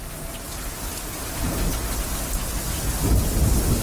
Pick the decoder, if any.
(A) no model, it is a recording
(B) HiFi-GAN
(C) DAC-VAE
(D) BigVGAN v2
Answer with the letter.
D